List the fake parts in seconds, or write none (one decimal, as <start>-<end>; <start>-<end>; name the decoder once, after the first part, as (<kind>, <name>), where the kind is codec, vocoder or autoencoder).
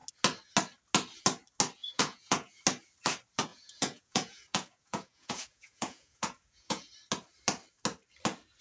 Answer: 1.8-2.6 (vocoder, Vocos); 3.5-6.9